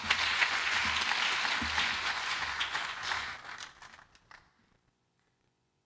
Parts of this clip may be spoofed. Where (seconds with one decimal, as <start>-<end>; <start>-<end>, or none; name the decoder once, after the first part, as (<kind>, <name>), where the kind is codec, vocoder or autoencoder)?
0.0-0.8 (vocoder, Vocos); 1.8-3.3; 4.9-5.8